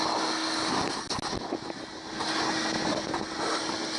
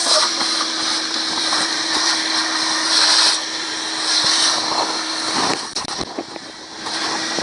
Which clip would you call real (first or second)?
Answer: first